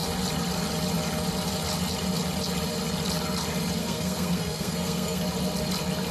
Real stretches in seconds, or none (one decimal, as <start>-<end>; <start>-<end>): 0.0-3.8; 5.2-6.1